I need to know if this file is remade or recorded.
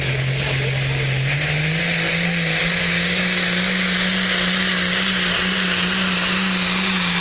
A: recorded